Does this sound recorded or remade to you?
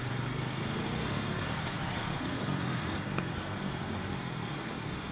remade